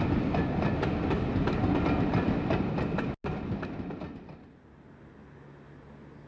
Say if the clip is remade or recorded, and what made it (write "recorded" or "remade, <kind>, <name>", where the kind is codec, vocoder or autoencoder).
recorded